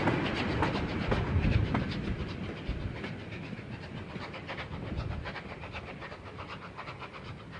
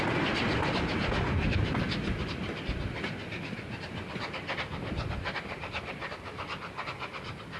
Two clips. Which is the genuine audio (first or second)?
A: second